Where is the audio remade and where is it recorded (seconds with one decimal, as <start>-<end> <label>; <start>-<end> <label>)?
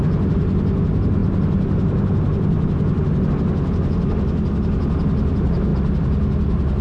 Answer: 0.0-6.8 recorded